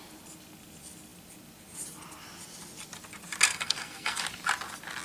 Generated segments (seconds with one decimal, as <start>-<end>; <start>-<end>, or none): 3.5-4.2